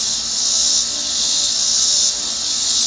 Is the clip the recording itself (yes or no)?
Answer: yes